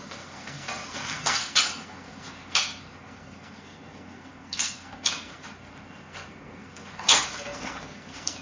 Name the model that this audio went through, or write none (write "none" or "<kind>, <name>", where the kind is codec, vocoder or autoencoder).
codec, SNAC